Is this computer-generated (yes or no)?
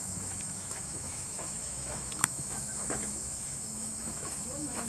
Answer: yes